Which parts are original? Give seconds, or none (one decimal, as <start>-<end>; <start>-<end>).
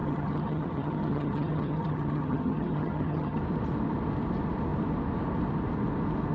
3.4-6.3